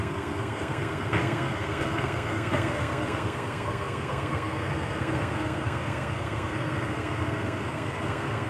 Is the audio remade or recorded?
remade